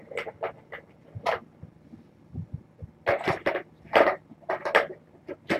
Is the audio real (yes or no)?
yes